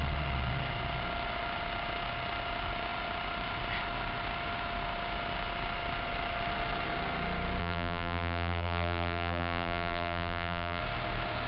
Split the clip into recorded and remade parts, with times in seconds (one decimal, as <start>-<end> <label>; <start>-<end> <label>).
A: 0.0-7.6 recorded; 7.6-10.8 remade; 10.8-11.5 recorded